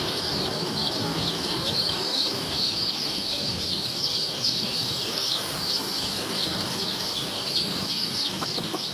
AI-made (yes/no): yes